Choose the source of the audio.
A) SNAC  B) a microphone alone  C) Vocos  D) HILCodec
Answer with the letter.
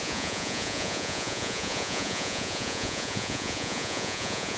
C